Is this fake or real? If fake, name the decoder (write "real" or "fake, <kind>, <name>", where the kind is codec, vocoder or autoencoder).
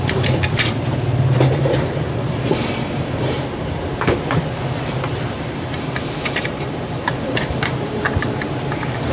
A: fake, vocoder, BigVGAN v2